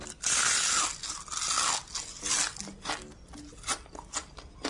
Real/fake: real